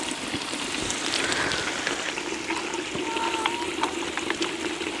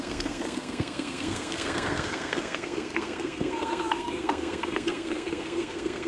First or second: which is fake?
second